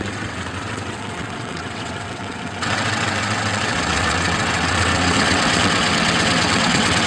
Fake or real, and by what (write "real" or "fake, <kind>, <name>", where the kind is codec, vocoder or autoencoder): fake, vocoder, WaveNeXt